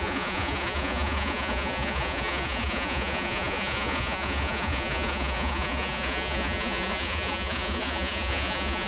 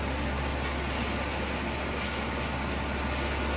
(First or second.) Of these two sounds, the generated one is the first